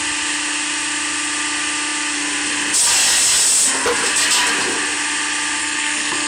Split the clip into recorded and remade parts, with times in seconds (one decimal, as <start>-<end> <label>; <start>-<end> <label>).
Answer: 0.0-5.6 recorded; 5.6-6.3 remade